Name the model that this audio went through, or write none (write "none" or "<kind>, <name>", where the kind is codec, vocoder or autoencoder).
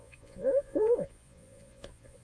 vocoder, Vocos